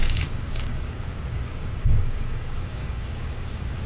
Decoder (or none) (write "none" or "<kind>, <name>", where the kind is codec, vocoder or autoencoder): codec, DAC